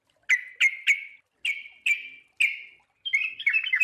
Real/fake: real